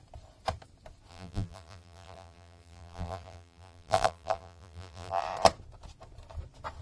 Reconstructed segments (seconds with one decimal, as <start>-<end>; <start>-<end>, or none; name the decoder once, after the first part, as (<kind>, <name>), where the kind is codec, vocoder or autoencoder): 1.1-5.2 (vocoder, BigVGAN v2)